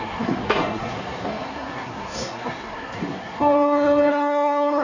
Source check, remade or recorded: remade